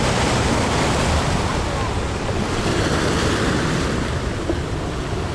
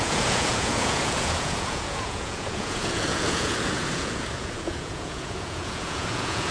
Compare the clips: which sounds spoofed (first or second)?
second